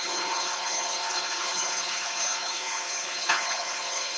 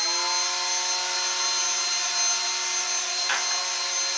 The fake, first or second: first